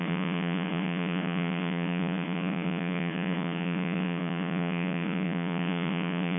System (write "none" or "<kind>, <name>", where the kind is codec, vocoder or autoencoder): vocoder, Vocos